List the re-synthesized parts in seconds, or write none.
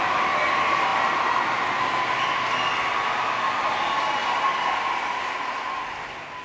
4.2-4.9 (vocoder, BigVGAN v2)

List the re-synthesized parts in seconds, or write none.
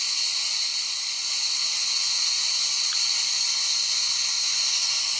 none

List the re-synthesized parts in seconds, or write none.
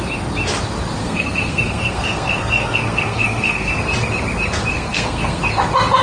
1.0-3.7 (codec, SNAC); 4.7-5.4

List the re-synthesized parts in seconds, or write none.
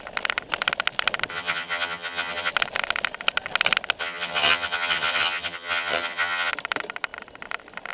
1.3-2.5 (vocoder, HiFi-GAN); 4.0-6.5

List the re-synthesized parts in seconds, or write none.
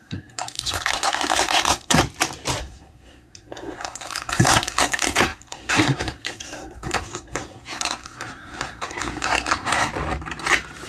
0.0-2.0 (codec, SNAC); 2.6-9.9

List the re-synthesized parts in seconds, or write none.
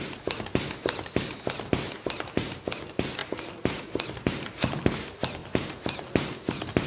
none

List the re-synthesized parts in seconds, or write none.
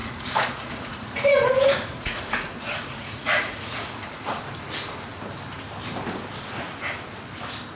0.0-4.3 (vocoder, Vocos)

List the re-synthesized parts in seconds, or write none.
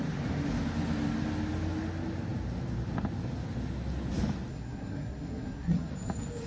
4.5-5.9 (codec, SNAC)